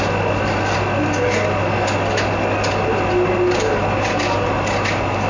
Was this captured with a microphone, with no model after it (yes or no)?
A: yes